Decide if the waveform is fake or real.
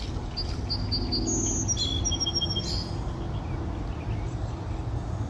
real